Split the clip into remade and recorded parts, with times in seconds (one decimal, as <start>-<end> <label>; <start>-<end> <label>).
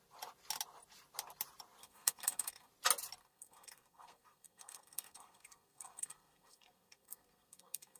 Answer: 0.0-1.8 recorded; 1.8-2.7 remade; 2.7-3.2 recorded; 3.2-8.0 remade